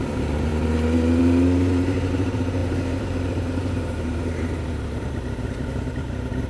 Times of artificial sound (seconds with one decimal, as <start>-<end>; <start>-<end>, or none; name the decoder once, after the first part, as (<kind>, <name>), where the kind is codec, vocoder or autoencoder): 0.0-0.5 (vocoder, BigVGAN v2); 1.2-6.5